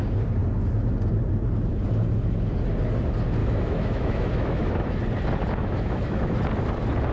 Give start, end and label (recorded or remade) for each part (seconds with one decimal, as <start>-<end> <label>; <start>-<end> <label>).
0.0-3.4 recorded; 3.4-5.0 remade; 5.0-5.6 recorded; 5.6-6.4 remade; 6.4-7.1 recorded